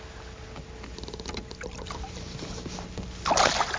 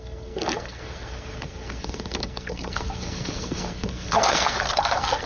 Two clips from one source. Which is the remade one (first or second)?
second